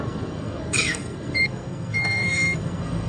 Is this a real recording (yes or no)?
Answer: no